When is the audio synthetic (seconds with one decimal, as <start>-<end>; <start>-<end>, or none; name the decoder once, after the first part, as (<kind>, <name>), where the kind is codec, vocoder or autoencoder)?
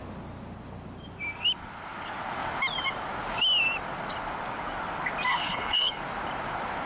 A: 5.3-6.0 (codec, HILCodec)